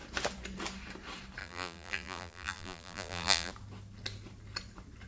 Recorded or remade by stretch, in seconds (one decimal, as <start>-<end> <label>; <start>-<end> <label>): 0.0-1.4 recorded; 1.4-3.5 remade; 3.5-5.1 recorded